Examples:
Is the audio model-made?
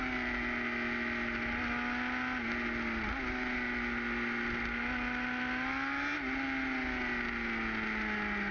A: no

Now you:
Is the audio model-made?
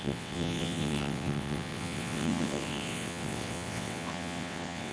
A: yes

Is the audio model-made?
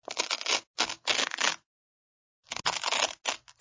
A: no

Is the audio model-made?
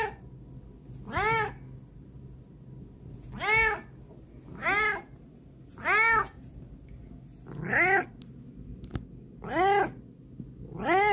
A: no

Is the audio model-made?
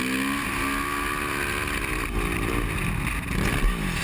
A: no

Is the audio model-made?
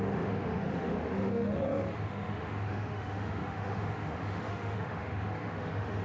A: yes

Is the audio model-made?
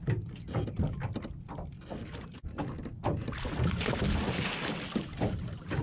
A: no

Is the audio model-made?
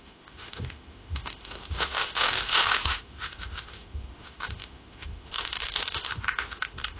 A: yes